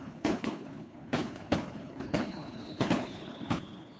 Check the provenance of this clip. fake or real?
fake